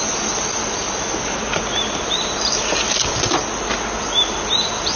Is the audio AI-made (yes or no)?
no